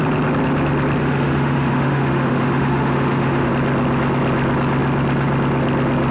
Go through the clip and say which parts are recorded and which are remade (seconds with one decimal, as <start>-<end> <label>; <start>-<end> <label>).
0.0-1.0 recorded; 1.0-3.5 remade; 3.5-6.1 recorded